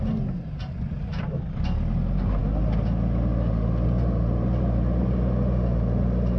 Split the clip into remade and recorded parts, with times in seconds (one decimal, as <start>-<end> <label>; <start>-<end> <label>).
0.0-6.4 recorded